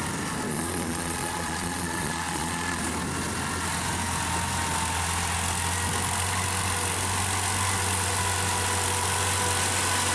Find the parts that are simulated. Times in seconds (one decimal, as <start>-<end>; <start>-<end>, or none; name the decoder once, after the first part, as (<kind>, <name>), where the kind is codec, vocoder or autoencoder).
0.5-2.8 (vocoder, Vocos)